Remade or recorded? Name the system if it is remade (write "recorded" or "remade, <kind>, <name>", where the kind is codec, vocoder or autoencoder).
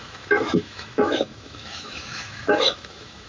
remade, autoencoder, DAC-VAE